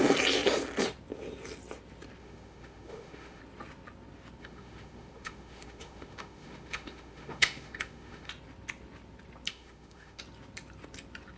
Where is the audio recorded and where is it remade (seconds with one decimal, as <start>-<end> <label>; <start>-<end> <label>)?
0.0-2.2 recorded; 2.2-3.4 remade; 3.4-4.4 recorded; 4.4-8.3 remade; 8.3-9.5 recorded; 9.5-10.2 remade; 10.2-11.4 recorded